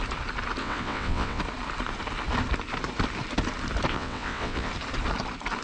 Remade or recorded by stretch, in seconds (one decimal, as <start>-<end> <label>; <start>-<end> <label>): 0.0-0.6 recorded; 0.6-1.4 remade; 1.4-3.9 recorded; 3.9-4.7 remade; 4.7-5.6 recorded